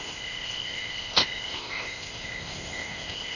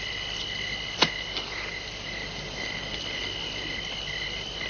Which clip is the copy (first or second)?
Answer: first